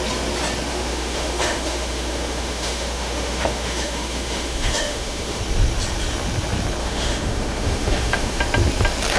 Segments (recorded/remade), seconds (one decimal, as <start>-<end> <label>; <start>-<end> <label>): 0.0-0.7 recorded; 0.7-5.4 remade; 5.4-6.8 recorded; 6.8-8.4 remade; 8.4-9.2 recorded

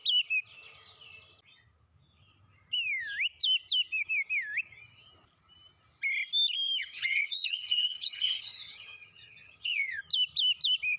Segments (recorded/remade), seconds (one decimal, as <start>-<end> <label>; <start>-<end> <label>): 0.0-6.8 recorded; 6.8-10.0 remade; 10.0-11.0 recorded

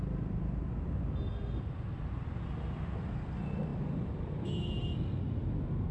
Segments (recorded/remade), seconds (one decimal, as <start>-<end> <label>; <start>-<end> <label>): 0.0-5.9 recorded